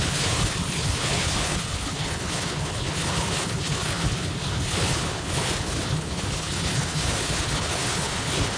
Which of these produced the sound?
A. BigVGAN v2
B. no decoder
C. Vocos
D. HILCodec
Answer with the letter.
D